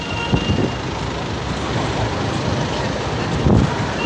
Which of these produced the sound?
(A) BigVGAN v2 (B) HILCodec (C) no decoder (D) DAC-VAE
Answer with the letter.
C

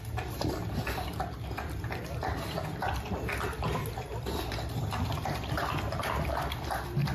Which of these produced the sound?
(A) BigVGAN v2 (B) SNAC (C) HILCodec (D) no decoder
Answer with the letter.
A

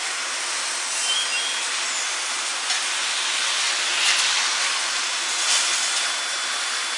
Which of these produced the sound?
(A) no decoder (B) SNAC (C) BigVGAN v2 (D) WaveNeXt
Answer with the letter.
A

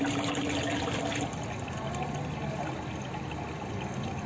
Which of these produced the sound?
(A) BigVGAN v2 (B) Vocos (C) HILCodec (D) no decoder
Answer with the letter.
D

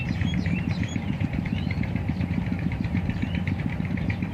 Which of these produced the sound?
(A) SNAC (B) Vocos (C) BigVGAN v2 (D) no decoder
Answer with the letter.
C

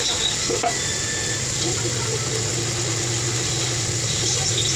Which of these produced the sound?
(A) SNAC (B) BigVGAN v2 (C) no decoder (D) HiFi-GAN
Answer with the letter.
C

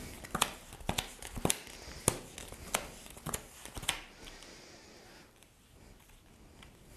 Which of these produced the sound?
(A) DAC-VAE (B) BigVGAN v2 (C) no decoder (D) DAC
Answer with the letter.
C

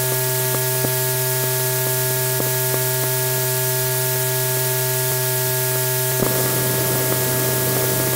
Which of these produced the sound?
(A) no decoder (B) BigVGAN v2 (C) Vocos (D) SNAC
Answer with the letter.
A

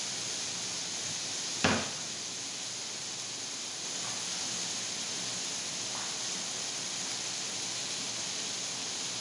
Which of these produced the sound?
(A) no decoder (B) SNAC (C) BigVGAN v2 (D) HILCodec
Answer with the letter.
A